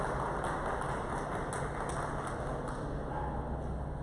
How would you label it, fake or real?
real